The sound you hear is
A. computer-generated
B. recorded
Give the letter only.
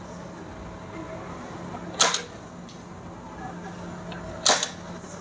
B